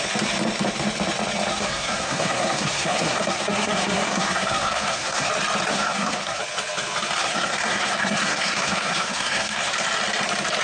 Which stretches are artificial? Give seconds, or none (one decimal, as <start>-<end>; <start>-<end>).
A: 1.5-5.3; 5.7-6.4; 7.2-9.7